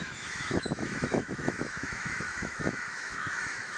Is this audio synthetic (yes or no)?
yes